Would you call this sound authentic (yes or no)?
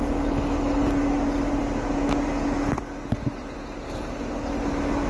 yes